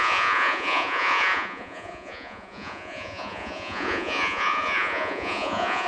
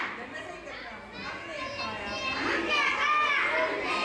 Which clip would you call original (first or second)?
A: second